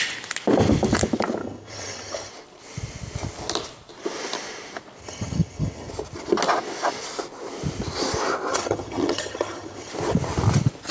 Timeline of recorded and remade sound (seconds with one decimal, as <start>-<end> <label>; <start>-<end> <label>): 0.0-1.4 recorded; 1.4-2.3 remade; 2.3-5.0 recorded; 5.0-5.9 remade; 5.9-8.5 recorded; 8.5-9.9 remade; 9.9-10.9 recorded